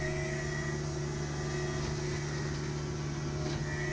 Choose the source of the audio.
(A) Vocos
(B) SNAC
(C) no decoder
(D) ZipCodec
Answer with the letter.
C